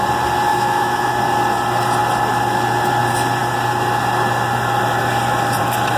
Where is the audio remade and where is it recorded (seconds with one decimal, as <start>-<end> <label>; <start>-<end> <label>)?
0.0-0.5 recorded; 0.5-1.1 remade; 1.1-6.0 recorded

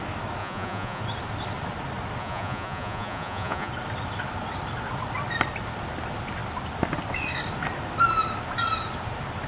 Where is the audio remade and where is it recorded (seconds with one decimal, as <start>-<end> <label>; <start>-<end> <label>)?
0.0-0.4 recorded; 0.4-1.0 remade; 1.0-2.2 recorded; 2.2-3.7 remade; 3.7-9.5 recorded